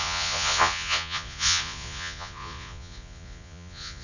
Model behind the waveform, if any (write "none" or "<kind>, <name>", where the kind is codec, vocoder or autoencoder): vocoder, Vocos